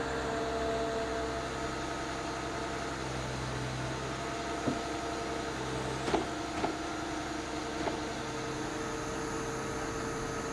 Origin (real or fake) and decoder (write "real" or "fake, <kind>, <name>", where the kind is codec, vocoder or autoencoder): real